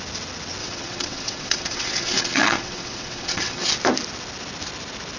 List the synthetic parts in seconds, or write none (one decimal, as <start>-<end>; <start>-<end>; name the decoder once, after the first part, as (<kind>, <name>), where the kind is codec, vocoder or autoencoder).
0.6-3.7 (vocoder, WaveNeXt)